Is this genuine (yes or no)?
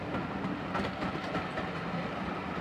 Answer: yes